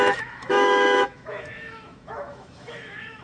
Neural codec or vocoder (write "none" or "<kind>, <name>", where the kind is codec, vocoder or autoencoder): autoencoder, DAC-VAE